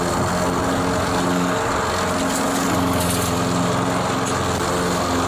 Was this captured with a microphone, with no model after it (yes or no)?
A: yes